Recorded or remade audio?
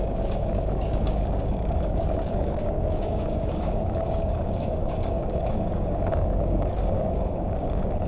remade